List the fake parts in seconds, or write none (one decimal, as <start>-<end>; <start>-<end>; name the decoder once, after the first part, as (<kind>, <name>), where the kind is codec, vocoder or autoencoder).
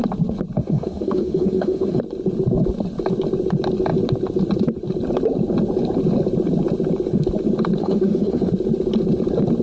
0.6-2.0 (autoencoder, DAC-VAE); 7.8-8.5